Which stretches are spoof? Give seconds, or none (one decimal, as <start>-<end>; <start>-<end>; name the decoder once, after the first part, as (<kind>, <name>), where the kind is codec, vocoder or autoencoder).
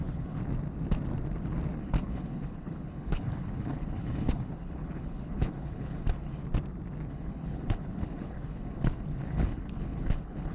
0.0-0.4 (codec, HILCodec); 1.8-6.4; 7.1-10.5